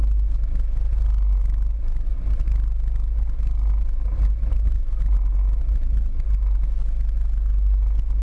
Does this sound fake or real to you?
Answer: real